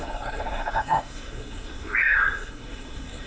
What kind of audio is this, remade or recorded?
remade